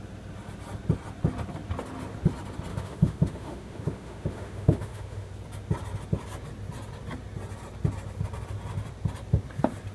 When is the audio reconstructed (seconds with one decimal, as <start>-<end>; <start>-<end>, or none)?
2.7-5.3